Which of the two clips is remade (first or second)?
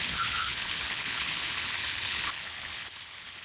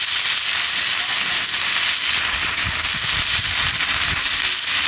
first